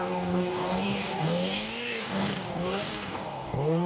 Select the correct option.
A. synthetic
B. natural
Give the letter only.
A